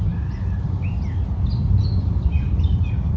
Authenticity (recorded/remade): recorded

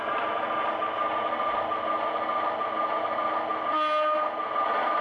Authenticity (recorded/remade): recorded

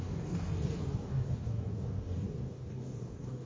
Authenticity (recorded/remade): remade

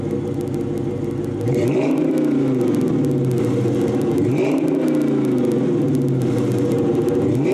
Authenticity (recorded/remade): recorded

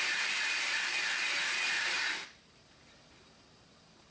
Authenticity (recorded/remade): remade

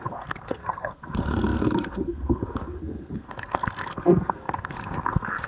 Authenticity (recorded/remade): remade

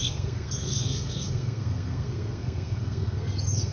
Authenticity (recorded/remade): remade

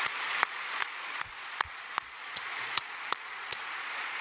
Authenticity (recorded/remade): remade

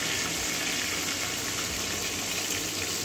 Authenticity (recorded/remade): recorded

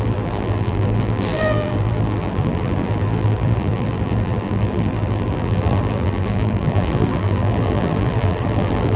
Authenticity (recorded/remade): remade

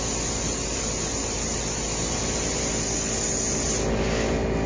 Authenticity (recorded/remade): recorded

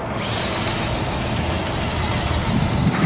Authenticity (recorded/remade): recorded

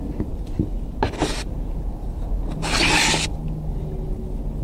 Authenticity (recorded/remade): recorded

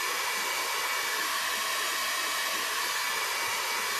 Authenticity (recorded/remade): recorded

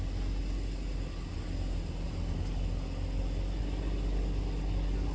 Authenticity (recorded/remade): recorded